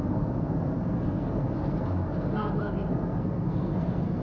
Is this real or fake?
fake